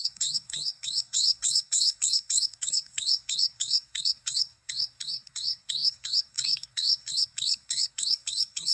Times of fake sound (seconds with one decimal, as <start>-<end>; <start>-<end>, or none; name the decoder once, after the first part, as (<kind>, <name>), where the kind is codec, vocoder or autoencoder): 0.0-8.7 (codec, SNAC)